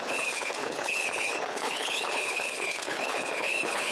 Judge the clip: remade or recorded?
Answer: remade